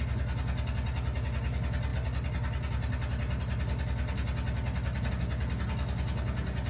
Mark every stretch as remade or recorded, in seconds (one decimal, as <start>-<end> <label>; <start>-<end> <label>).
0.0-6.7 recorded